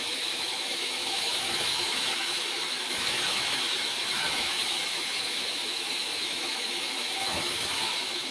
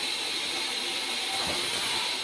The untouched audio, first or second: second